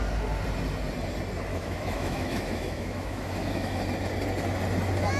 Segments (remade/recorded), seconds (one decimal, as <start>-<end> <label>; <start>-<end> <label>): 0.0-1.5 recorded; 1.5-3.8 remade; 3.8-5.2 recorded